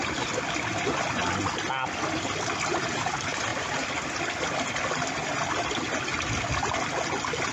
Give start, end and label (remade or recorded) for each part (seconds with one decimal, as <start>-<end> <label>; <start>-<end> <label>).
0.0-7.5 recorded